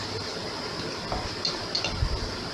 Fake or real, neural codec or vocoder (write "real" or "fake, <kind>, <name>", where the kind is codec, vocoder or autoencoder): real